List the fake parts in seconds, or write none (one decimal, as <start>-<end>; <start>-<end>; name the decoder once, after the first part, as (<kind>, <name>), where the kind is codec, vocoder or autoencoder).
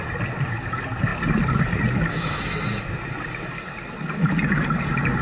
none